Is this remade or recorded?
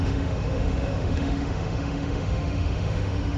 remade